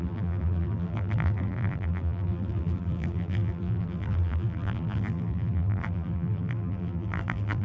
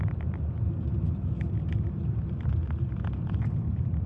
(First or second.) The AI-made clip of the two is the first